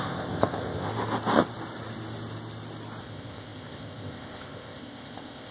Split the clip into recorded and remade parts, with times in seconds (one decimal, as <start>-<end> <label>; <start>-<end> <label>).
0.0-0.9 remade; 0.9-3.0 recorded; 3.0-5.5 remade